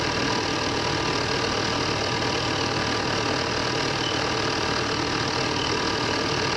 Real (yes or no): yes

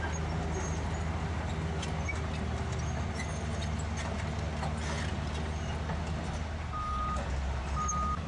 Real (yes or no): yes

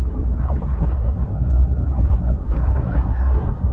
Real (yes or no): no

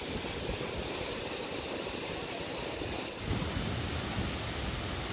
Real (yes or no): yes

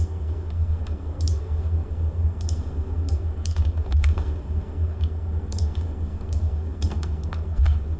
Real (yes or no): no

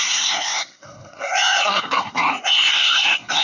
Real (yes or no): no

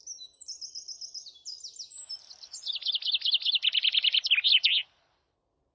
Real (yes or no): yes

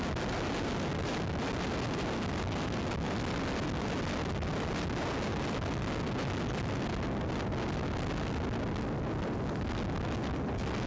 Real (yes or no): yes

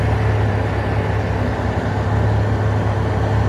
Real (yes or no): yes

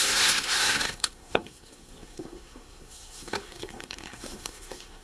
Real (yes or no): no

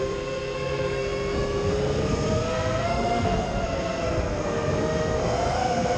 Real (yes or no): no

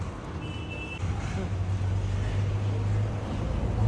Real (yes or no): yes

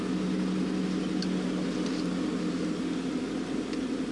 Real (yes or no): yes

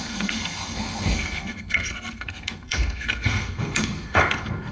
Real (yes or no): no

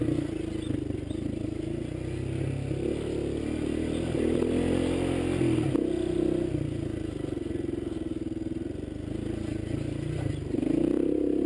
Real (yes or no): yes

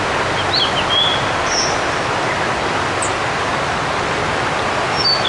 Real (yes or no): yes